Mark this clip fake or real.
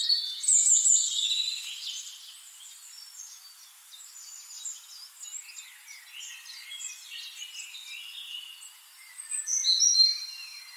real